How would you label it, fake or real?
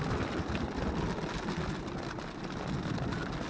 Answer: real